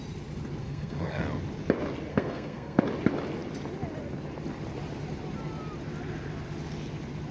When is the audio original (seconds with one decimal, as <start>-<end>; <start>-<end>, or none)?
0.0-0.6; 1.2-2.1; 2.8-7.3